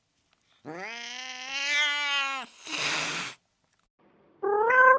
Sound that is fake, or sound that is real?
real